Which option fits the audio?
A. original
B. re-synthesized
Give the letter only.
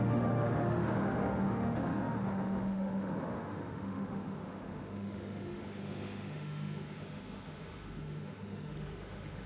B